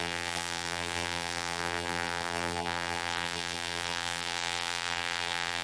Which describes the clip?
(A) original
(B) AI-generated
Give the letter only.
B